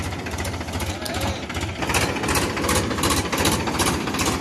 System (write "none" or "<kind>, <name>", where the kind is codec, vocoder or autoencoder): none